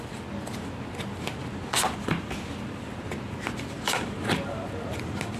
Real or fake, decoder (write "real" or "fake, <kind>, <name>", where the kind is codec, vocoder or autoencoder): real